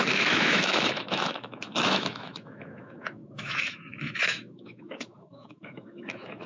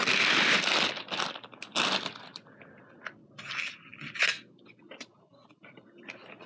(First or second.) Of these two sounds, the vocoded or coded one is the first